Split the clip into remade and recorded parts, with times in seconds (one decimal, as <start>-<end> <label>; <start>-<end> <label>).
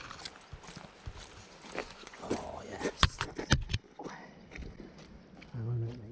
0.0-1.8 recorded; 1.8-3.3 remade; 3.3-6.1 recorded